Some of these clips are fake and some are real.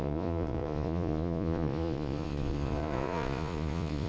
fake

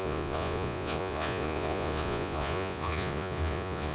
fake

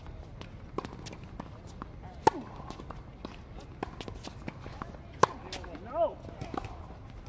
real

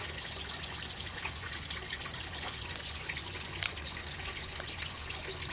fake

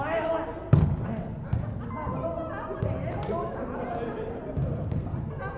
real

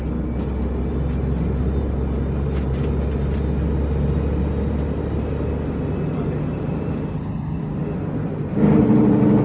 real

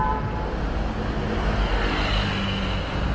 real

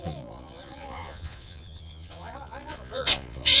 fake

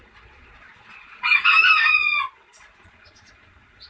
fake